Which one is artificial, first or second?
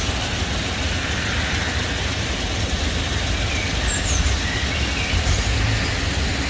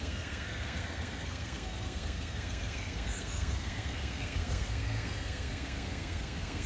second